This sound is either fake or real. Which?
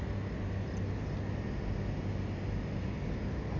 real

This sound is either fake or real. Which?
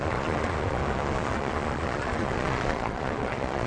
fake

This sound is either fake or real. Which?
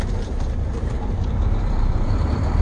fake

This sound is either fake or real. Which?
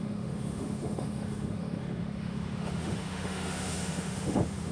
fake